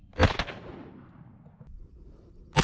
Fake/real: real